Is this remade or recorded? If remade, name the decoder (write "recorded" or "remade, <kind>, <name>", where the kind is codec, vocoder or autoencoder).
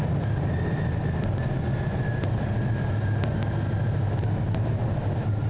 remade, vocoder, BigVGAN v2